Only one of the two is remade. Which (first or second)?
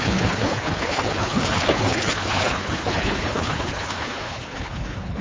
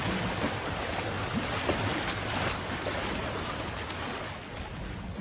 first